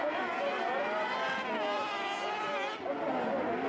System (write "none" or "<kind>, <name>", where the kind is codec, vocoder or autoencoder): none